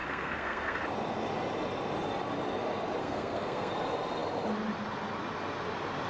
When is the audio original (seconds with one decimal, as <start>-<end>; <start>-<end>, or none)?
0.8-3.0; 3.7-6.1